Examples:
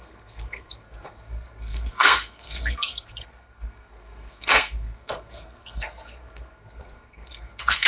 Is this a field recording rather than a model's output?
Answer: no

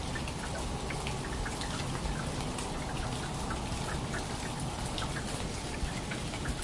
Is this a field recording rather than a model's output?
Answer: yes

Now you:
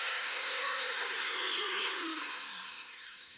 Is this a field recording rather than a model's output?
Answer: no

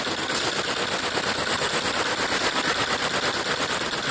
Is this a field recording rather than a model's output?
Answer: yes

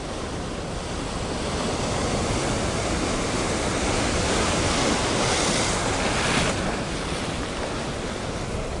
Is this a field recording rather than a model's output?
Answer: yes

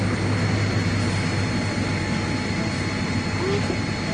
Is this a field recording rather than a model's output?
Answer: yes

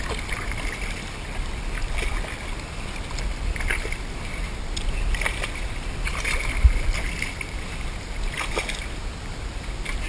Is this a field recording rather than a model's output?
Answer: yes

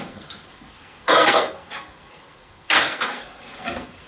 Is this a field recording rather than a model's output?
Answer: no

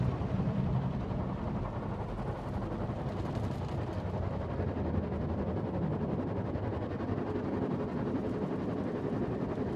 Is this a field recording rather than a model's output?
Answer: yes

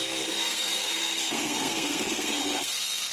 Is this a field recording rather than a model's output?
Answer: no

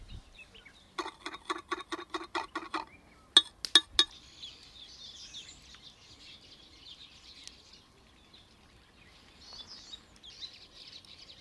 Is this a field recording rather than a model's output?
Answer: yes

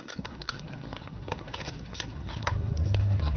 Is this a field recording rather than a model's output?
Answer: no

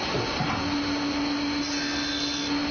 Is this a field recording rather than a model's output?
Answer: yes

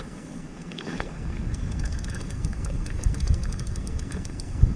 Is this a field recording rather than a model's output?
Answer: no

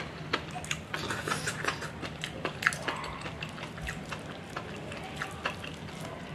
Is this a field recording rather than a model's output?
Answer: yes